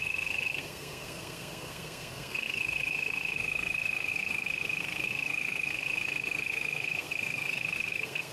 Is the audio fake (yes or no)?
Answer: yes